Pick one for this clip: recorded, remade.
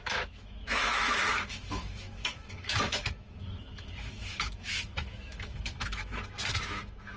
remade